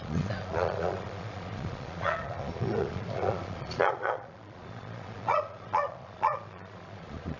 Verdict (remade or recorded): remade